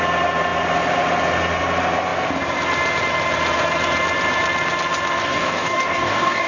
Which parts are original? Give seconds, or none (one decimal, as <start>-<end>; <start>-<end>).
0.0-5.2